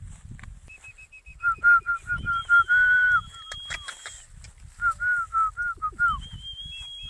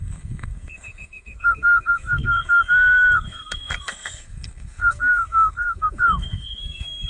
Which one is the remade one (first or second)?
second